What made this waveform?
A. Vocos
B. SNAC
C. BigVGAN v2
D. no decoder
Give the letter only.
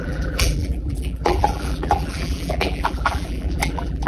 C